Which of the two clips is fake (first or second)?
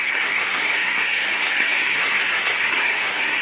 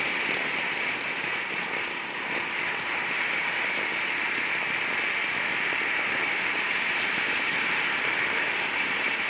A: first